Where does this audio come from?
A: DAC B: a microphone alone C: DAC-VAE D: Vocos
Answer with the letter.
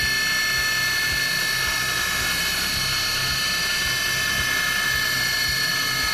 B